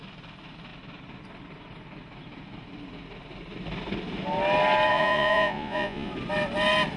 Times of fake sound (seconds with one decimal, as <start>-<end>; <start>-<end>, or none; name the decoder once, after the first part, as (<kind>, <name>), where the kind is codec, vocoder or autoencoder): 4.9-6.1 (vocoder, Vocos)